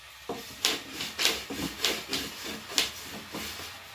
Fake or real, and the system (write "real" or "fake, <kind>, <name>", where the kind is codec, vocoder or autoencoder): real